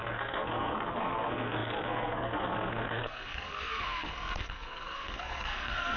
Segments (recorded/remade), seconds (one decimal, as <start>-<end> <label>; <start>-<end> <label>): 0.0-6.0 remade